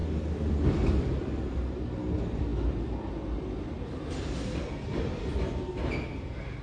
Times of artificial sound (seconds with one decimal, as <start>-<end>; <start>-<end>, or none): 0.0-1.6